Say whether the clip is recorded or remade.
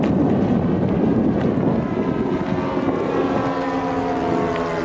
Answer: recorded